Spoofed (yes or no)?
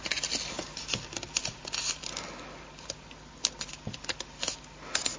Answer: no